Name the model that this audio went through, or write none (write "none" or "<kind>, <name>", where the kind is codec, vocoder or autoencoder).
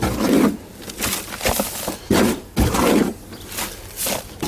none